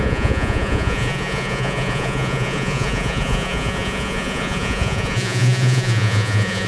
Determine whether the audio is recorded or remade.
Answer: remade